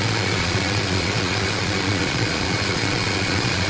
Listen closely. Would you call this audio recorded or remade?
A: remade